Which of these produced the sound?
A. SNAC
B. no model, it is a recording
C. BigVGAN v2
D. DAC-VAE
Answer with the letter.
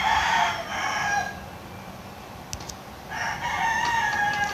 B